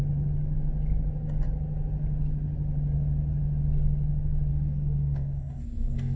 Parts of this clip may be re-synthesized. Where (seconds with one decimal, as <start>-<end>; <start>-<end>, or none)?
4.5-6.2